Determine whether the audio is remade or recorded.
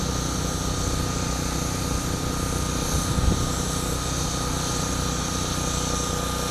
recorded